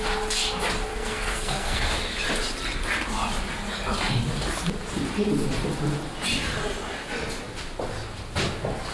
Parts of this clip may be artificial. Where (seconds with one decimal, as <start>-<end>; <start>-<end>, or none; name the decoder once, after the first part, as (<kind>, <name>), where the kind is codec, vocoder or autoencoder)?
0.9-1.9 (codec, SNAC)